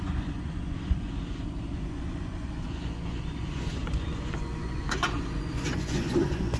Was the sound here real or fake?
fake